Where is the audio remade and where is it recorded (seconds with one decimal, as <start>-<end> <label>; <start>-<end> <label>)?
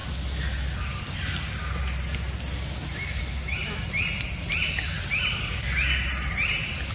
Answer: 0.0-6.9 recorded